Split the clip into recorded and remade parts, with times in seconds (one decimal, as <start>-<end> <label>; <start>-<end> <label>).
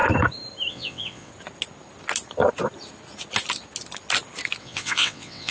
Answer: 0.0-0.7 recorded; 0.7-1.3 remade; 1.3-4.6 recorded; 4.6-5.5 remade